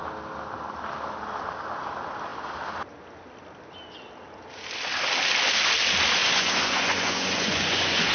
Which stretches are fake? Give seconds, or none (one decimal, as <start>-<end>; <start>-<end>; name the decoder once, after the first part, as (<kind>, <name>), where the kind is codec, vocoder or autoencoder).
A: 6.2-8.1 (vocoder, Vocos)